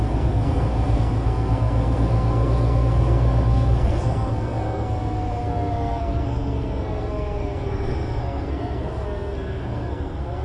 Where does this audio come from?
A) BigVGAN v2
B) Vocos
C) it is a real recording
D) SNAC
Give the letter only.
D